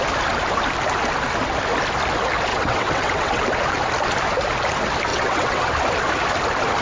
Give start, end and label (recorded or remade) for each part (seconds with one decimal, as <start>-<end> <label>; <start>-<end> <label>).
0.0-2.5 recorded; 2.5-3.4 remade; 3.4-5.1 recorded; 5.1-5.7 remade; 5.7-6.8 recorded

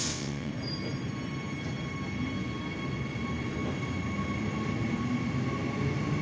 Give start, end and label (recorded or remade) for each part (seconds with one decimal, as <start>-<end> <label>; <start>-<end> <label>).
0.0-0.5 remade; 0.5-6.2 recorded

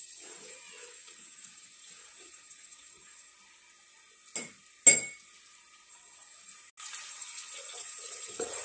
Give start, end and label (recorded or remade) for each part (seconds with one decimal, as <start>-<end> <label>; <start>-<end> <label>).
0.0-3.3 remade; 3.3-5.9 recorded; 5.9-6.5 remade; 6.5-7.1 recorded; 7.1-8.6 remade

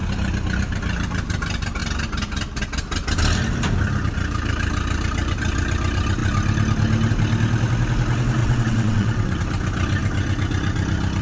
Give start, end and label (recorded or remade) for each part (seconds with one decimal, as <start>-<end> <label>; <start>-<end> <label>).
0.0-8.4 recorded; 8.4-9.4 remade; 9.4-11.2 recorded

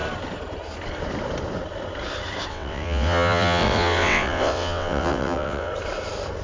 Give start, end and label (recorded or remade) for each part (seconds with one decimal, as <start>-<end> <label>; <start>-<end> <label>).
0.0-2.5 recorded; 2.5-5.7 remade; 5.7-6.4 recorded

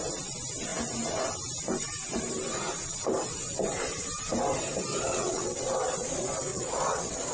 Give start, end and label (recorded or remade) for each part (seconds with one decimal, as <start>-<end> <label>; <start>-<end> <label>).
0.0-4.9 recorded; 4.9-5.6 remade; 5.6-6.5 recorded; 6.5-7.3 remade

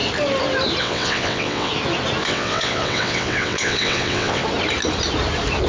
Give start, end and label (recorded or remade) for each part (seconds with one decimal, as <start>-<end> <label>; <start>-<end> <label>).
0.0-0.8 recorded; 0.8-1.7 remade; 1.7-2.2 recorded; 2.2-4.4 remade; 4.4-5.7 recorded